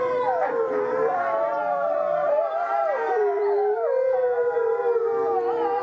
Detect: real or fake fake